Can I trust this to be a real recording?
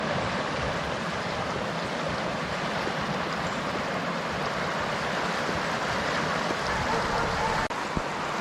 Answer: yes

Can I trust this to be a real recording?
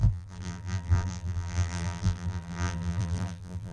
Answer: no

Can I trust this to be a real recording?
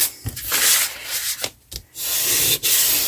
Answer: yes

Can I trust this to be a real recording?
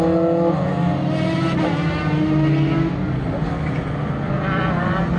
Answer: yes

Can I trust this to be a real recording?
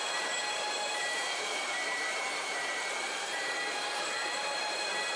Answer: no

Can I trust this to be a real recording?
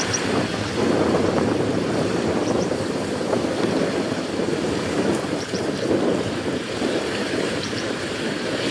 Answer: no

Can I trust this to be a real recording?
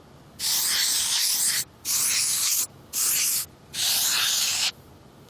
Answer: yes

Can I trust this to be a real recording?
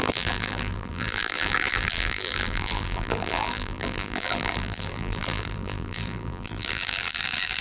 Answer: no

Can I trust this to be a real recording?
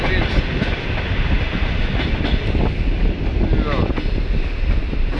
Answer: yes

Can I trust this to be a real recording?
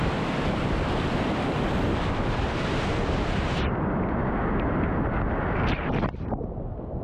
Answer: yes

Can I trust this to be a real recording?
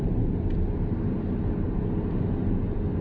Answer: yes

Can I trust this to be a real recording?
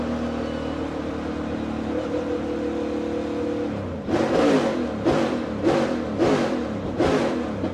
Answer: yes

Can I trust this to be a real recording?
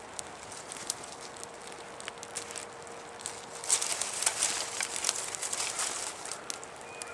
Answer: yes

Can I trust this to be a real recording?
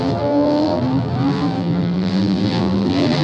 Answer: no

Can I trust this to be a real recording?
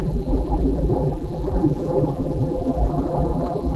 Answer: no